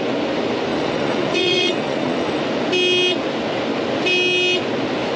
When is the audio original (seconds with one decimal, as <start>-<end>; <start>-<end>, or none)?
0.0-0.7; 2.4-5.2